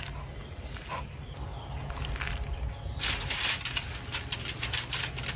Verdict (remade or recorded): recorded